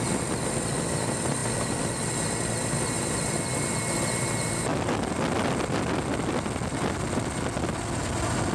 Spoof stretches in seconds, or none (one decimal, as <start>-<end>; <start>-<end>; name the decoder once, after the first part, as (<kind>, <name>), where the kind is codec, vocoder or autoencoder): none